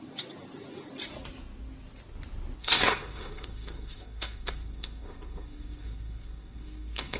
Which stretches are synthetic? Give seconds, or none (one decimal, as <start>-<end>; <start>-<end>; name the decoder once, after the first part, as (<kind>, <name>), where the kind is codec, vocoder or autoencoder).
2.6-7.2 (codec, SNAC)